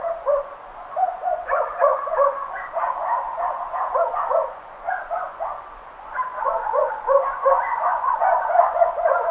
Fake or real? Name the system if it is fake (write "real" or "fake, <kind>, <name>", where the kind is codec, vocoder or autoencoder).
fake, vocoder, Vocos